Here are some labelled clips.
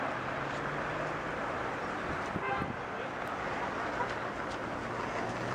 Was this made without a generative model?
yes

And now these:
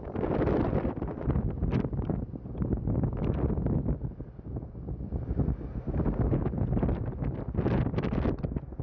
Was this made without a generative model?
yes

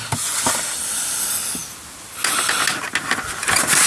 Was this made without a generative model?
yes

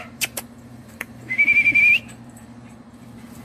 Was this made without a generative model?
no